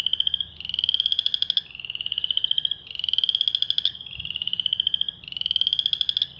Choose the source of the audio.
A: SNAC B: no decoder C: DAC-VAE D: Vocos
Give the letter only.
B